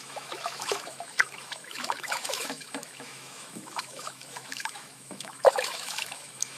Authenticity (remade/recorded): remade